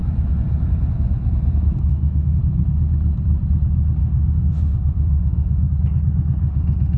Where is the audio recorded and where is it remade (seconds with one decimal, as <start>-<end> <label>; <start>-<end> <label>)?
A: 0.0-1.9 recorded; 1.9-2.4 remade; 2.4-4.0 recorded; 4.0-5.7 remade; 5.7-6.4 recorded; 6.4-7.0 remade